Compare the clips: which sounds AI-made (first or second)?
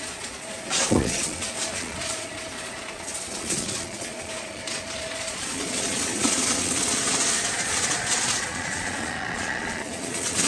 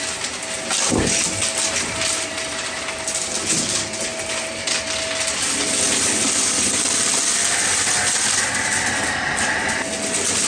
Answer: first